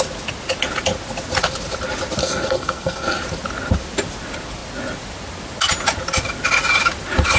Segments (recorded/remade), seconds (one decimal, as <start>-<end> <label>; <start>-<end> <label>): 0.0-2.2 recorded; 2.2-3.2 remade; 3.2-7.4 recorded